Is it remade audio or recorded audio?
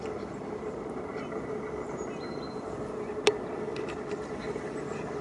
recorded